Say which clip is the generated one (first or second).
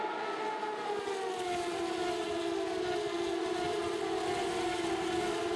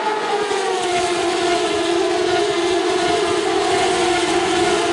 second